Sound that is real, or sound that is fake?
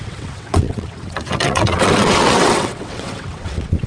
fake